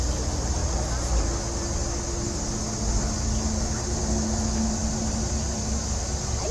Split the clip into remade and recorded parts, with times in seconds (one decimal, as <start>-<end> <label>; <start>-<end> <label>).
0.0-4.8 recorded; 4.8-5.4 remade; 5.4-6.5 recorded